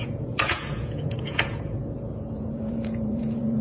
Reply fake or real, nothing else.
fake